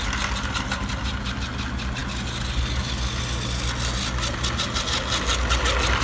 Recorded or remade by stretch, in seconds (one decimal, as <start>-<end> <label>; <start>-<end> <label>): 0.0-6.0 recorded